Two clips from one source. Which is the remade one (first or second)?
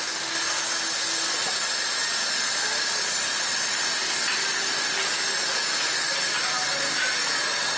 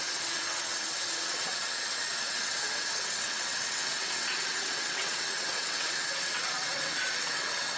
second